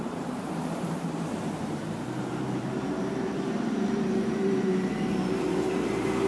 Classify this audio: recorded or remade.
remade